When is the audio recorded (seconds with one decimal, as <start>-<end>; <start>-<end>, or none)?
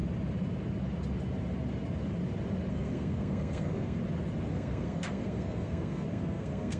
0.0-2.7; 4.0-4.5